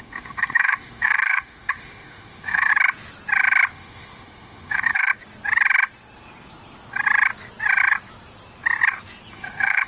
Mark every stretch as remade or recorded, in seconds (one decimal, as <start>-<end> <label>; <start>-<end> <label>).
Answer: 0.0-2.7 remade; 2.7-3.7 recorded; 3.7-5.1 remade; 5.1-9.3 recorded; 9.3-9.9 remade